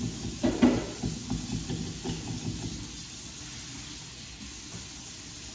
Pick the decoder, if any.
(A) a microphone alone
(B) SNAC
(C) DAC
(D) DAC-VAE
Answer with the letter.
A